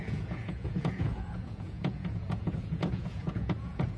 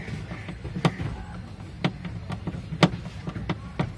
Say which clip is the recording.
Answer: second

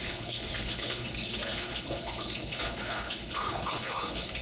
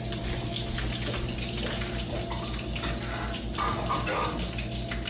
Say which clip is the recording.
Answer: second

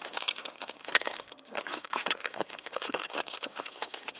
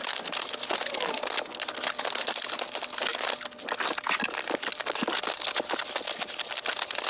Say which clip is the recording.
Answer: second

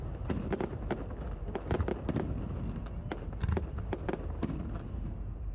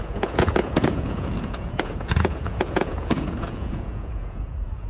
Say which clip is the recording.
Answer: first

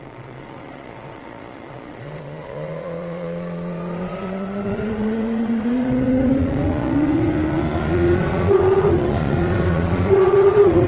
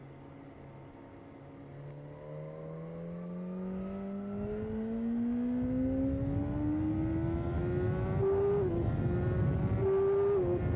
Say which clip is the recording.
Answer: second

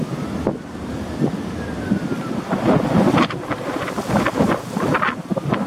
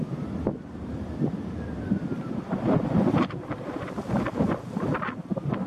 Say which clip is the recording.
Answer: first